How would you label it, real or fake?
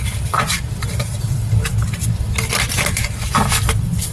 real